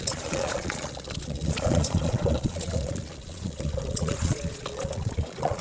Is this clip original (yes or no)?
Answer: no